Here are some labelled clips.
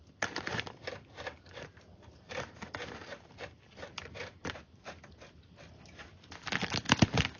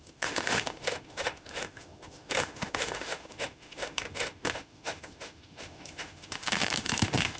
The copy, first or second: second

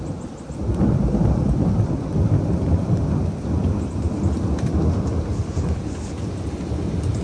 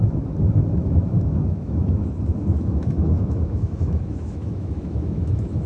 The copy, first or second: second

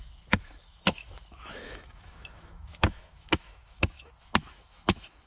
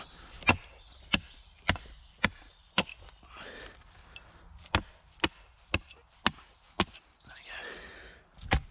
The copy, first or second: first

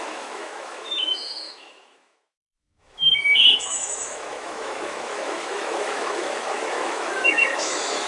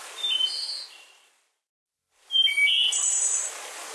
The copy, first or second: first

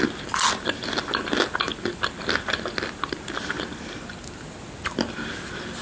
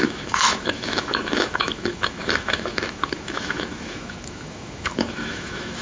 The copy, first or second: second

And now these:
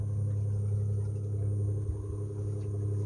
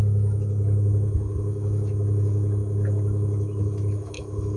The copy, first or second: second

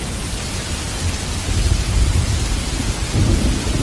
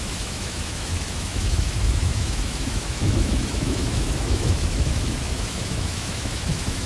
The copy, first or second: second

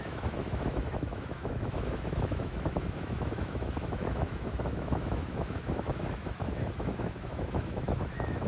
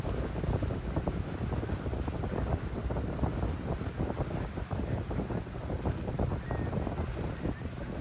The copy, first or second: first